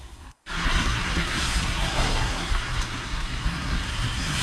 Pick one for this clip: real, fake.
fake